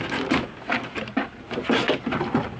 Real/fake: real